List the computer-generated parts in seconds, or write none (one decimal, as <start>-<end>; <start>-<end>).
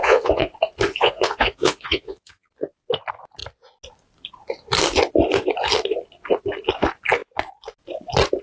0.0-0.5; 0.9-2.5